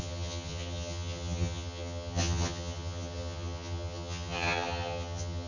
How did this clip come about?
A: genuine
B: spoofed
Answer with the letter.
B